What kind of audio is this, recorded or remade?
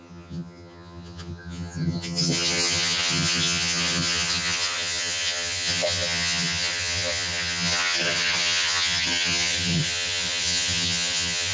remade